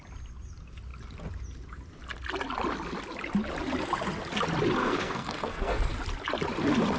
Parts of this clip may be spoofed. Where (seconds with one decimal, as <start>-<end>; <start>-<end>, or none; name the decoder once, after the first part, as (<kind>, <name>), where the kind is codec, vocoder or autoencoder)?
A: 4.8-5.9 (codec, SNAC)